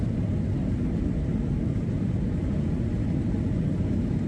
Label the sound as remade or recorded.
recorded